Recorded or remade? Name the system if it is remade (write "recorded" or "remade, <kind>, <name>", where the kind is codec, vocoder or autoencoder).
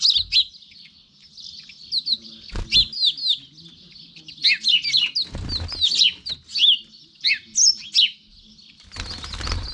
recorded